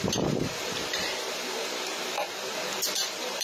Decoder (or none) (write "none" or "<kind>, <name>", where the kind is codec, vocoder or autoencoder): vocoder, BigVGAN v2